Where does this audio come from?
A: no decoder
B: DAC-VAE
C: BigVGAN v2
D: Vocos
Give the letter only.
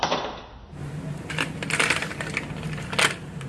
A